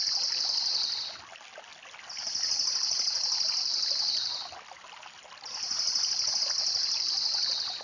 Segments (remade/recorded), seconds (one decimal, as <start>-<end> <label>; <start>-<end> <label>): 0.0-7.8 recorded